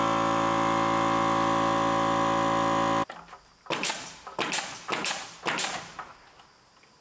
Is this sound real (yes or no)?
yes